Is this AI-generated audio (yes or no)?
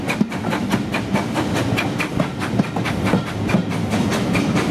no